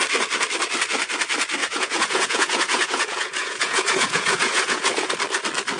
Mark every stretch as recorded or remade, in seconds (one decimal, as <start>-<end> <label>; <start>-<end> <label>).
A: 0.0-1.6 recorded; 1.6-5.1 remade; 5.1-5.8 recorded